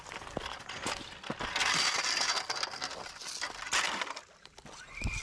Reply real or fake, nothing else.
real